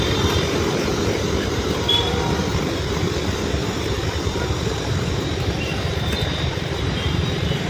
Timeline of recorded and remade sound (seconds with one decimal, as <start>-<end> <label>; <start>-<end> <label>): 0.0-7.7 remade